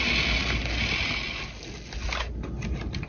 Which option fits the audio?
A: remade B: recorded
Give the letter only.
B